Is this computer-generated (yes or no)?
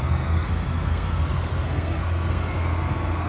yes